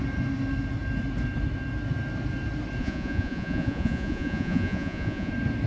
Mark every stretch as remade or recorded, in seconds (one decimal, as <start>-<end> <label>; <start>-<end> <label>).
0.0-2.8 recorded; 2.8-5.3 remade; 5.3-5.7 recorded